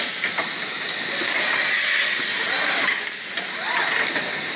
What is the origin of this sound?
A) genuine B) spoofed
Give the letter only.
A